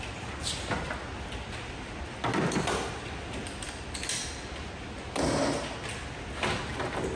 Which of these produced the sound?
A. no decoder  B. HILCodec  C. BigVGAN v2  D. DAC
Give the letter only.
A